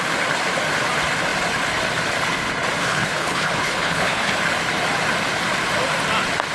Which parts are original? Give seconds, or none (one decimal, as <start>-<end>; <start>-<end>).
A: 0.0-2.8; 4.4-6.5